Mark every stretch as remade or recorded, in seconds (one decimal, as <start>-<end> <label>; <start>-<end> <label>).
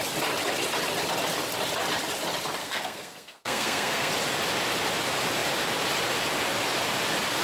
0.0-2.6 recorded; 2.6-4.1 remade; 4.1-7.4 recorded